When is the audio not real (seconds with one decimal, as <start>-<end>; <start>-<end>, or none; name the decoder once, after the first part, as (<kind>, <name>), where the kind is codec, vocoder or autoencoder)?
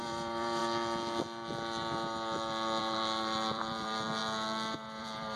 0.0-0.6 (vocoder, BigVGAN v2); 2.8-4.2; 5.0-5.4